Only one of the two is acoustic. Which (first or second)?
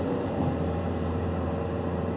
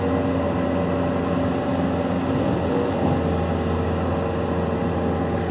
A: second